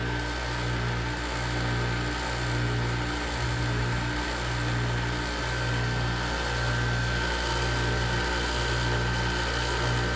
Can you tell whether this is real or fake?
real